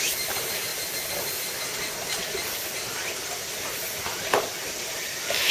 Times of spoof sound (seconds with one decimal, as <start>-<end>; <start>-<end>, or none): 0.0-0.7; 3.6-5.5